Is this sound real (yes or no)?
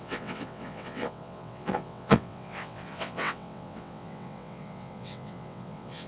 no